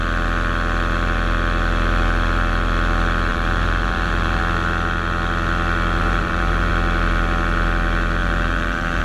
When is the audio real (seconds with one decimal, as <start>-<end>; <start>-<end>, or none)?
0.0-3.3; 4.4-6.0; 6.7-8.2